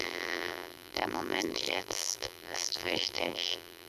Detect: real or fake fake